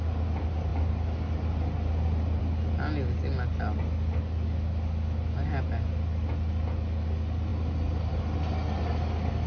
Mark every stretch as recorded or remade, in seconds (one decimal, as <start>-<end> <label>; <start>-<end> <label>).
0.0-9.5 recorded